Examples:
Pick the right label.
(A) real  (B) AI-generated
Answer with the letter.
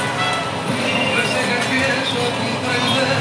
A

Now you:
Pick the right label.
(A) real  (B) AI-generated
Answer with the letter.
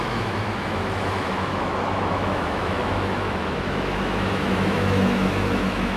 B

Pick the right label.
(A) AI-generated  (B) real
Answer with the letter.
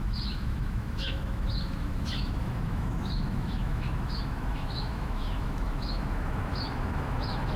A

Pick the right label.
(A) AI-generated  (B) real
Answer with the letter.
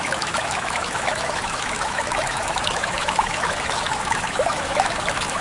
A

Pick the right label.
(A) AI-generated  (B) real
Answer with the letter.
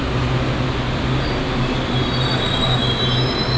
B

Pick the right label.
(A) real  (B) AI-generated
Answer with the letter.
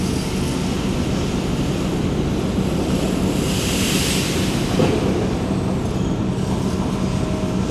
A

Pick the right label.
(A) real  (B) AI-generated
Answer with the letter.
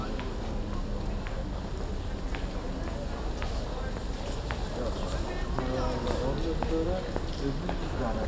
A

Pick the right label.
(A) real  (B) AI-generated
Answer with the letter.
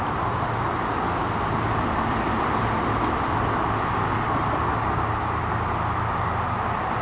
A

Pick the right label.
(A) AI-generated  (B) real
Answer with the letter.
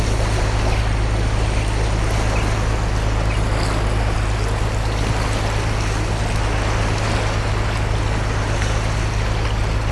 B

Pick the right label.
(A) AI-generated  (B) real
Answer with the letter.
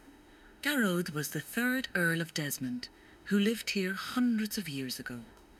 A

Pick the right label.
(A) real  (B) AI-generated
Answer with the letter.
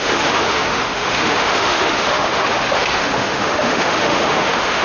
B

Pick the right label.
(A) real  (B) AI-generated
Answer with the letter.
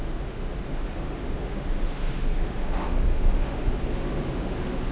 B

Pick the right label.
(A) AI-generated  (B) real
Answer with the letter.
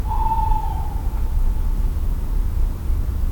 B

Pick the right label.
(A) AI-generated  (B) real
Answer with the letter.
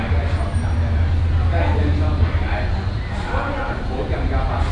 B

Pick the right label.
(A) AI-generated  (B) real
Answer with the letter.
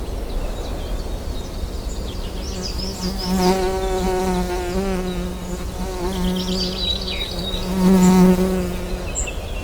B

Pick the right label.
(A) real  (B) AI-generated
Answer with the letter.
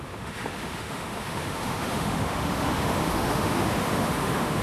B